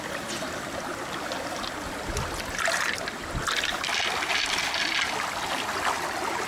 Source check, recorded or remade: recorded